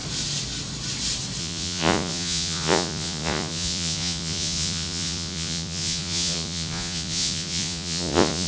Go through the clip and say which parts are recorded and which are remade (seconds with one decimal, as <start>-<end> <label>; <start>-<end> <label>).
0.0-1.4 recorded; 1.4-8.5 remade